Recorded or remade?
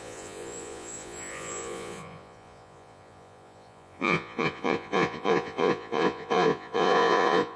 remade